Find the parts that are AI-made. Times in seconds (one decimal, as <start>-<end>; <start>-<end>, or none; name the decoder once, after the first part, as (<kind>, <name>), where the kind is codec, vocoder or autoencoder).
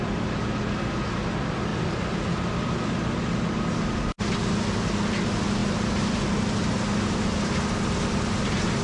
none